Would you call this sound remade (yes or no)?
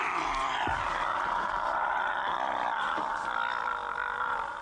no